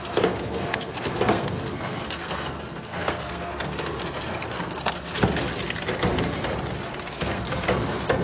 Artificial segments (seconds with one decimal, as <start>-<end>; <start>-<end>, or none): 0.0-5.5; 7.1-8.2